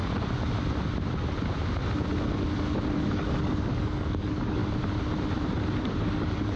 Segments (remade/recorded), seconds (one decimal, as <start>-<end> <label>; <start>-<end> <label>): 0.0-3.0 recorded; 3.0-4.6 remade; 4.6-5.8 recorded; 5.8-6.6 remade